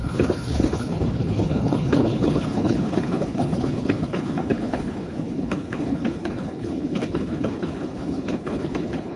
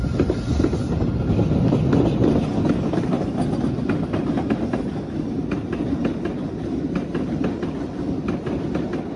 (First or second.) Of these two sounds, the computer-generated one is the first